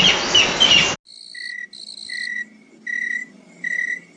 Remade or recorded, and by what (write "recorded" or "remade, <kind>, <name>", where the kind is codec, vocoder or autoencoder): recorded